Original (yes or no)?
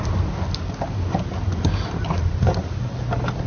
yes